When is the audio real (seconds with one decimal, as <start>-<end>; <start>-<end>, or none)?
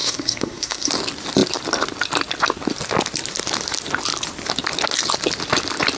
0.9-6.0